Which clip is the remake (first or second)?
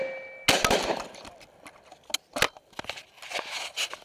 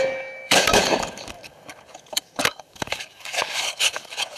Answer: second